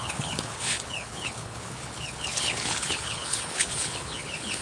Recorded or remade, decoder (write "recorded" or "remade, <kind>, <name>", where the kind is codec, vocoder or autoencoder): remade, codec, HILCodec